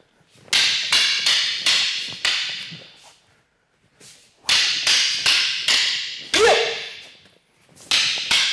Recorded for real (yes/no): yes